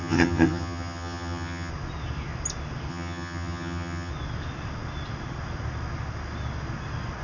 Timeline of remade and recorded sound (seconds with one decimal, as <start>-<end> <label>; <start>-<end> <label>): 0.0-1.7 remade; 1.7-2.9 recorded; 2.9-4.1 remade; 4.1-7.2 recorded